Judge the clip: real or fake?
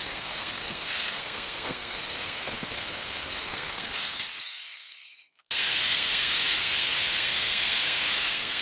fake